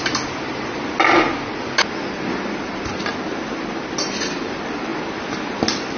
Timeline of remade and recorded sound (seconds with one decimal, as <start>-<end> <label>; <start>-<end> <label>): 0.0-6.0 recorded